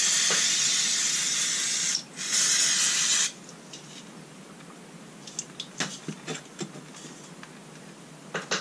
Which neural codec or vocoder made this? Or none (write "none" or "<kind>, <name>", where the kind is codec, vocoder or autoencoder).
none